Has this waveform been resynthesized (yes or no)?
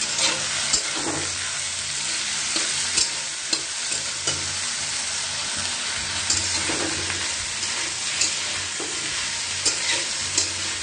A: no